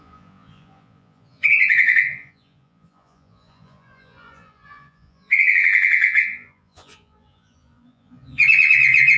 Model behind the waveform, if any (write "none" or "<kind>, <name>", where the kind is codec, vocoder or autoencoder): vocoder, Vocos